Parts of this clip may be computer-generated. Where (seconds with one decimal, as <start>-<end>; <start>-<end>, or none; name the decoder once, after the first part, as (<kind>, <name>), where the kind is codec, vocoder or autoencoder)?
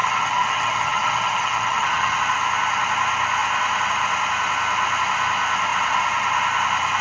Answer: 0.0-2.2 (vocoder, HiFi-GAN)